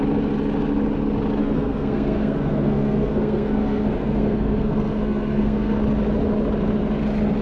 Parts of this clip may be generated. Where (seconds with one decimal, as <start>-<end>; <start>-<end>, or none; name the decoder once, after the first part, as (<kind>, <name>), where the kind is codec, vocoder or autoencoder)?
1.4-5.8 (codec, SNAC)